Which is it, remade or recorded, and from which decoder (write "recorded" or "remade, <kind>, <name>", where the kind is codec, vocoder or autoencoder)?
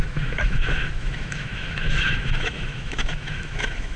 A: remade, autoencoder, DAC-VAE